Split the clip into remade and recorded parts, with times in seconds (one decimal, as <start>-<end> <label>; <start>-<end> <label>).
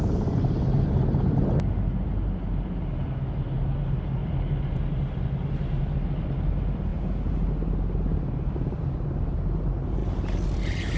0.0-11.0 recorded